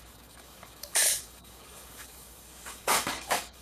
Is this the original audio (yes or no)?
no